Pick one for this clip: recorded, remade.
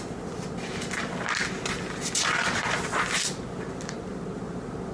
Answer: recorded